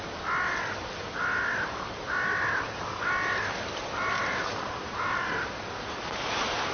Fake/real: real